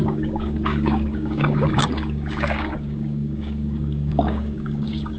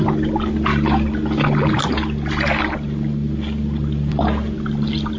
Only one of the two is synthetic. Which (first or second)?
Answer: first